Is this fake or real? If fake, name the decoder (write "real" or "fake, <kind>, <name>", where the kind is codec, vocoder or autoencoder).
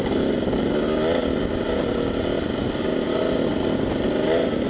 real